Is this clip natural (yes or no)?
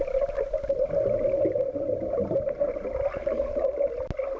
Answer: yes